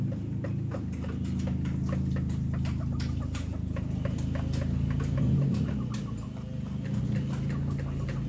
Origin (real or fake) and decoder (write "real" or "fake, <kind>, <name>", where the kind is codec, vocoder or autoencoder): real